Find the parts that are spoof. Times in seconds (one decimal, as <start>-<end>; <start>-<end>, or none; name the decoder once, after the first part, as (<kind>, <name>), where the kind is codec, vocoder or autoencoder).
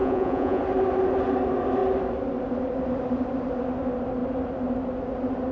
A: 0.0-0.6 (vocoder, Vocos)